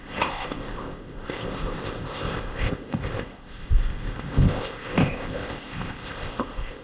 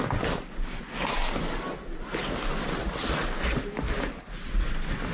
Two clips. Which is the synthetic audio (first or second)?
first